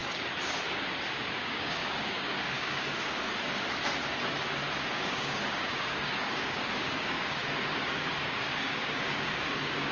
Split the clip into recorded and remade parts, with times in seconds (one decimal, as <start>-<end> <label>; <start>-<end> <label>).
0.0-1.4 recorded; 1.4-3.3 remade; 3.3-4.9 recorded; 4.9-9.9 remade